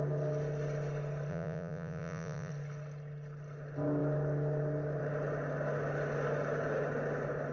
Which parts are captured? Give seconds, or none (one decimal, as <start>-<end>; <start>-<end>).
0.0-1.3; 2.5-7.5